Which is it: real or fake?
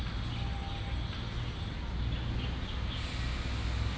real